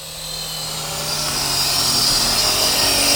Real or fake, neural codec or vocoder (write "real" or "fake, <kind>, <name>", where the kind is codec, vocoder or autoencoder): real